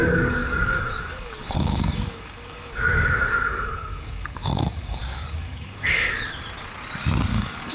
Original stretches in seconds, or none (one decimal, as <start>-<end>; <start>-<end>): 6.2-7.3